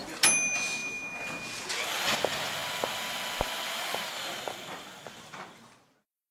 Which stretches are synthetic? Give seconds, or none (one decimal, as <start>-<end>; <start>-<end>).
none